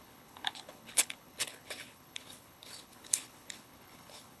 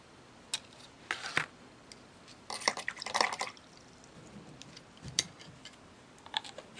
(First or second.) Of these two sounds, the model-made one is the first